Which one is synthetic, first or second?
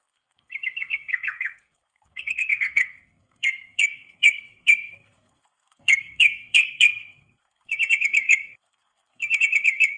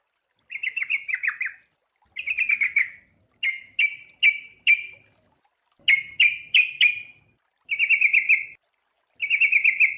first